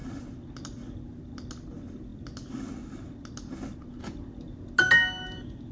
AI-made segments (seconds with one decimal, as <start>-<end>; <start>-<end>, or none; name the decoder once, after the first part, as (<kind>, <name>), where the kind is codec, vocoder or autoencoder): none